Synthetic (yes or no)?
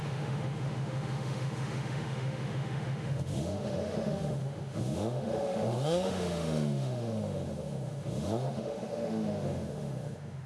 yes